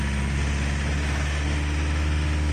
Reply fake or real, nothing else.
real